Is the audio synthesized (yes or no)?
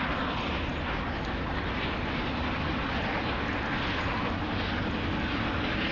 no